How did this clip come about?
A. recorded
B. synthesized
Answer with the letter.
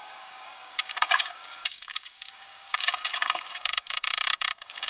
B